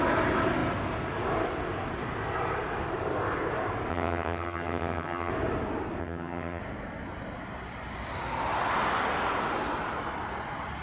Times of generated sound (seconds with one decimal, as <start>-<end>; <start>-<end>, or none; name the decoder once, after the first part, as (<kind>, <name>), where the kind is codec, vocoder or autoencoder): 3.9-5.3 (vocoder, HiFi-GAN); 6.0-6.6